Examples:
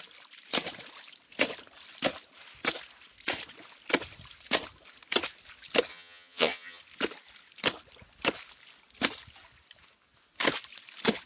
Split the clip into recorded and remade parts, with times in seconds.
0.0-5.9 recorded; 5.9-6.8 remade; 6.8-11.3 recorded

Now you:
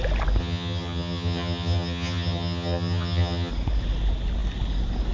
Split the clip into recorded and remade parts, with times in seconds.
0.0-0.4 recorded; 0.4-3.5 remade; 3.5-5.1 recorded

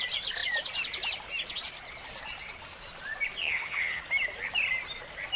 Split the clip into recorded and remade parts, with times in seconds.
0.0-3.4 recorded; 3.4-4.0 remade; 4.0-5.4 recorded